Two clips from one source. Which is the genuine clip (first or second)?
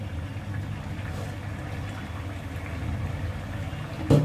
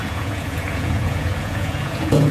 first